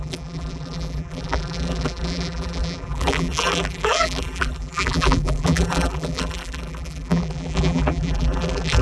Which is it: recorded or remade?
remade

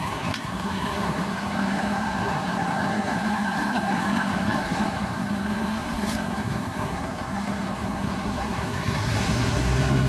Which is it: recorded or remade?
remade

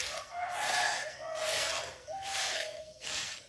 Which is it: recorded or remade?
remade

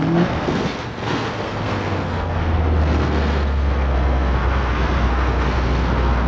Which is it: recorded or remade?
remade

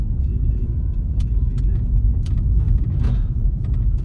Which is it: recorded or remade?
remade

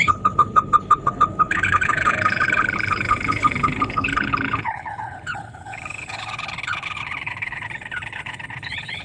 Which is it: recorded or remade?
remade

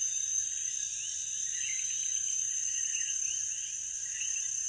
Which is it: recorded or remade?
recorded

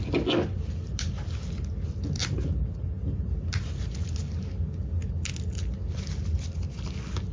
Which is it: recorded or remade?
recorded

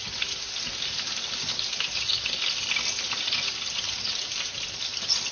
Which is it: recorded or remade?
recorded